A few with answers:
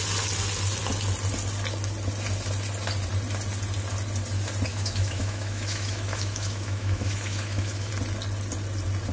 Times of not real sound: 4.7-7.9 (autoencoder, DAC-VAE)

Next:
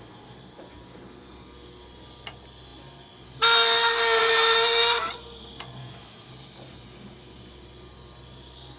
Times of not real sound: 5.8-6.3 (autoencoder, DAC-VAE)